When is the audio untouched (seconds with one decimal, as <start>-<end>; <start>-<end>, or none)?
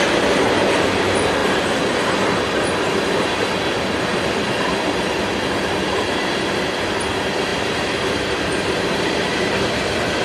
0.0-7.5; 9.6-10.2